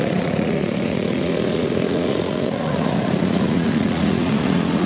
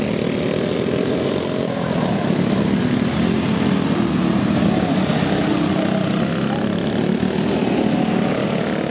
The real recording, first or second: second